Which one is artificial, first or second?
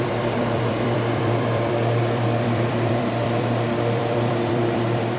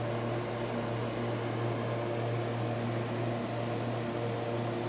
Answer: first